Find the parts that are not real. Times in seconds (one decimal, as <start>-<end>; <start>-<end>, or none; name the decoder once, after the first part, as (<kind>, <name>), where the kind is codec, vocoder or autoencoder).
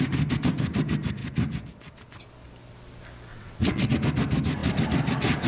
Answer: 3.3-3.9 (vocoder, WaveNeXt)